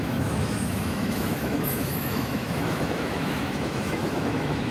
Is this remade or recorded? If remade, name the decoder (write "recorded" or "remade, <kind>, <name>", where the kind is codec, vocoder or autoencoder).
remade, autoencoder, DAC-VAE